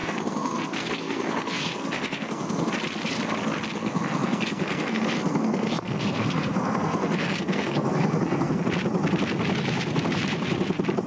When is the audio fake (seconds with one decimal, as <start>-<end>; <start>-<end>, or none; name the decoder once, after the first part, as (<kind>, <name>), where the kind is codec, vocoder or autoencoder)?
0.0-2.7 (codec, SNAC); 3.8-8.6